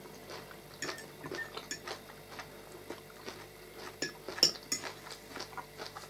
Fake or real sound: real